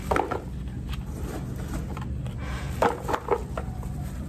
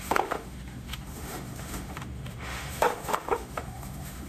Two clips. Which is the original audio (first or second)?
first